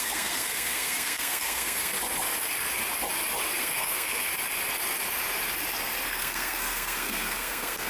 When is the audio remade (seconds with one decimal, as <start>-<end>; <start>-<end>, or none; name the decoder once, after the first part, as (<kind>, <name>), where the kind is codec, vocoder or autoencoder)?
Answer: 0.0-1.9 (codec, SNAC); 3.6-4.3; 6.1-7.9